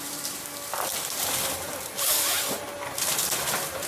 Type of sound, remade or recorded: recorded